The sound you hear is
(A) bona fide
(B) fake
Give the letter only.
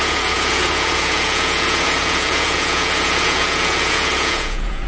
B